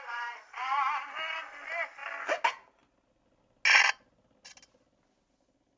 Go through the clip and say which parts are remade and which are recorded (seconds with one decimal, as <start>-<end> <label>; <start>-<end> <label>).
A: 0.0-5.8 recorded